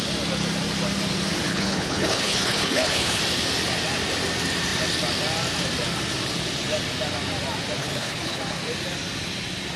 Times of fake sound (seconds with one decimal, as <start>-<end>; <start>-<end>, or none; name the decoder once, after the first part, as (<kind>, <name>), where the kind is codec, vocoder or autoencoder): 1.5-3.2 (codec, HILCodec); 7.8-8.4